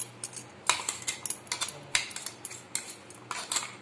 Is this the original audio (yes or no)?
yes